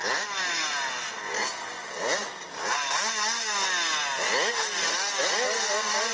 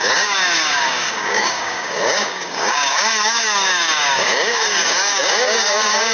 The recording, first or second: first